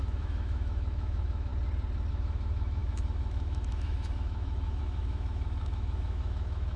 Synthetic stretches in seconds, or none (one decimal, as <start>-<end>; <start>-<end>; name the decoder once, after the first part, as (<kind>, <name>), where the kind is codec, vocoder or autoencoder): 0.0-1.5 (autoencoder, DAC-VAE); 2.1-6.8